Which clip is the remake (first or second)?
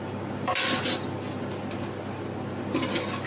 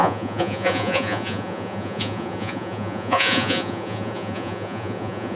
second